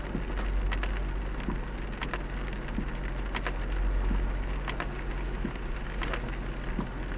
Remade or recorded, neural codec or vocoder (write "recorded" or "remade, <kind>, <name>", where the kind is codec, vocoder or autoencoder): recorded